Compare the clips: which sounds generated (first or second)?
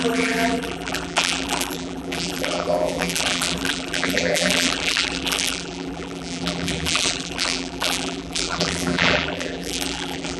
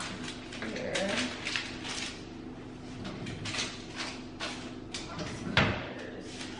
first